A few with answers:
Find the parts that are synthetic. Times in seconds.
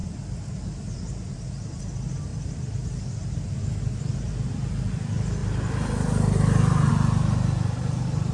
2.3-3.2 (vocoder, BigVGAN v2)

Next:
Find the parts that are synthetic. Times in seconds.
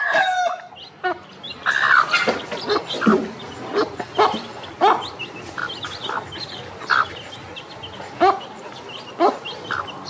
none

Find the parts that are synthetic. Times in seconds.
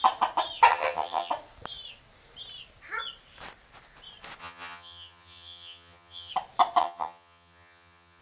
0.7-1.3 (vocoder, HiFi-GAN); 4.4-6.3; 6.8-8.2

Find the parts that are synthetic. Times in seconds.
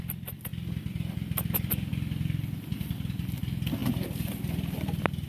none